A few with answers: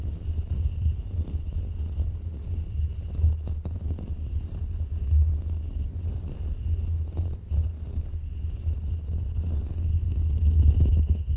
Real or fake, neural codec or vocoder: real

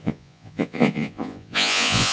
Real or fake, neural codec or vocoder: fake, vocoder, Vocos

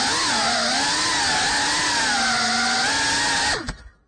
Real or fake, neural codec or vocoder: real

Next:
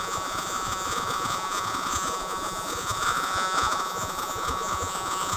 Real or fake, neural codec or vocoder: fake, vocoder, Vocos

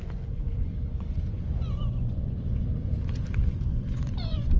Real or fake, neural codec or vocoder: fake, vocoder, Vocos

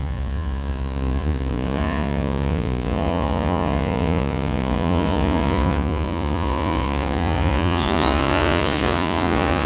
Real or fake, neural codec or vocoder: fake, vocoder, Vocos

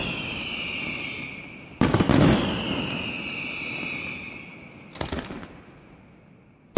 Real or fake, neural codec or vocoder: real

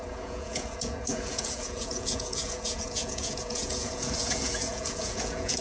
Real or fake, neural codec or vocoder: fake, vocoder, Vocos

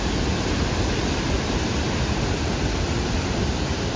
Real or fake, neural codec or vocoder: real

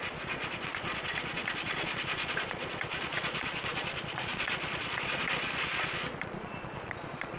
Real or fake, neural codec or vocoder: fake, vocoder, Vocos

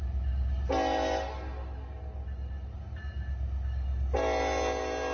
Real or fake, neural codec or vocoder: real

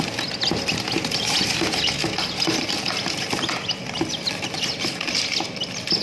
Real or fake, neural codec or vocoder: real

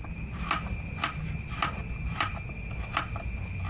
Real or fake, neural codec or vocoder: real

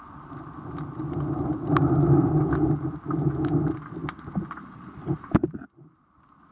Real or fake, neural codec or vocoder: real